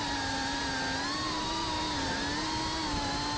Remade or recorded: recorded